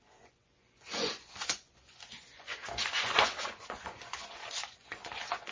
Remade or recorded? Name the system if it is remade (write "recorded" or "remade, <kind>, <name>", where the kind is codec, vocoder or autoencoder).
remade, vocoder, Vocos